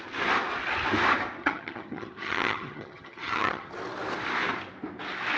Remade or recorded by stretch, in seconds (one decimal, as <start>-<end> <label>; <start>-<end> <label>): 0.0-1.4 recorded; 1.4-3.7 remade; 3.7-5.4 recorded